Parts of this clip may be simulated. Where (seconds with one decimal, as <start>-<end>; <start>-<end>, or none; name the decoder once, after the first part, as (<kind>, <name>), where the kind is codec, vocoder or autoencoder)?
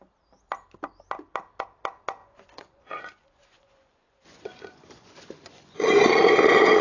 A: 2.2-6.3 (vocoder, Vocos)